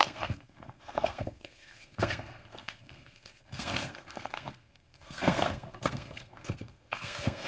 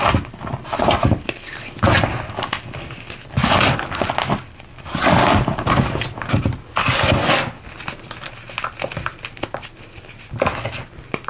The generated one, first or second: first